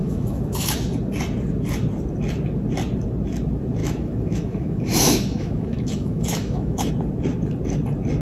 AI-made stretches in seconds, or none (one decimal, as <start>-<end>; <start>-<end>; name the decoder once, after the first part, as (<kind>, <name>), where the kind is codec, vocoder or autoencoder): 0.0-0.7 (autoencoder, DAC-VAE); 3.8-6.9